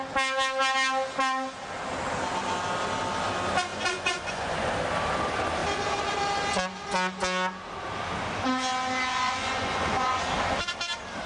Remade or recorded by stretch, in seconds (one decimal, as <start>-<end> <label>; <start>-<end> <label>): 0.0-3.7 recorded; 3.7-4.7 remade; 4.7-9.1 recorded; 9.1-10.2 remade; 10.2-11.3 recorded